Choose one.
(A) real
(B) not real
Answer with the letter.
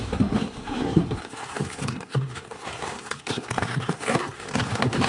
B